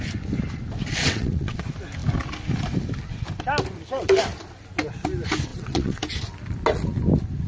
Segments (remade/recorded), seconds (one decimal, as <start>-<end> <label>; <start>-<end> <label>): 0.0-1.0 recorded; 1.0-1.6 remade; 1.6-5.5 recorded; 5.5-6.0 remade; 6.0-7.5 recorded